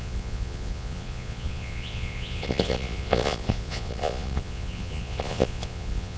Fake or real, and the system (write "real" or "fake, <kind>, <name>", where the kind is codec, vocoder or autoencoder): fake, vocoder, Vocos